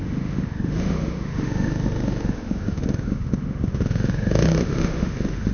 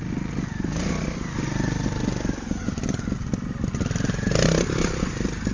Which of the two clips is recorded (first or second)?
second